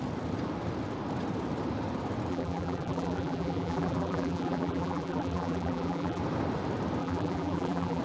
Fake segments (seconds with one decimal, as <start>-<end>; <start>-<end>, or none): 2.3-6.2; 7.0-8.0